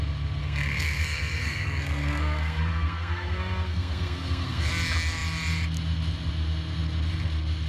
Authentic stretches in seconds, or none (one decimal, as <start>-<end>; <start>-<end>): 0.0-0.4; 4.7-7.7